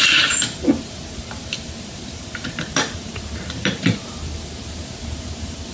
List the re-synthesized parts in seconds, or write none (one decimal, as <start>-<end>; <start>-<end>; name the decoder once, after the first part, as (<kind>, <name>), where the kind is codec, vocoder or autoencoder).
0.0-5.7 (vocoder, BigVGAN v2)